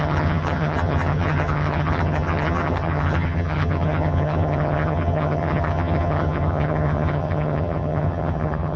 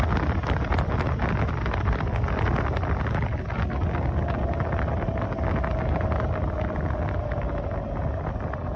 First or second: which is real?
second